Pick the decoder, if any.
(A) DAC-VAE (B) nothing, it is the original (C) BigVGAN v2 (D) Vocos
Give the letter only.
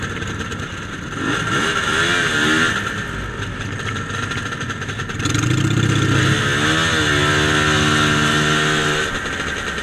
B